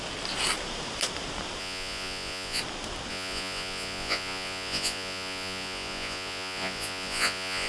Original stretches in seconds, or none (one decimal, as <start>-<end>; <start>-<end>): 0.0-1.6; 2.6-3.1